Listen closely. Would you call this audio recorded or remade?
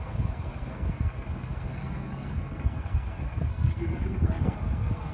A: remade